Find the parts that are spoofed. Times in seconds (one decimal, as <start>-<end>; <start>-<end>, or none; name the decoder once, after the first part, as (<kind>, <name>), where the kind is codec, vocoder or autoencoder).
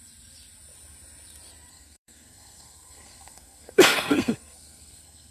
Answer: 1.7-5.3 (codec, SNAC)